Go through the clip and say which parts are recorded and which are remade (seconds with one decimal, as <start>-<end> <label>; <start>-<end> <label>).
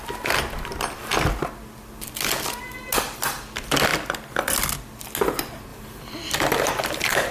0.0-5.7 recorded; 5.7-6.3 remade; 6.3-7.3 recorded